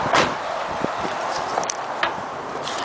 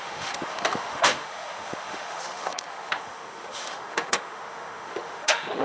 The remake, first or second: second